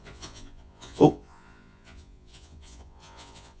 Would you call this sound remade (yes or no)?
yes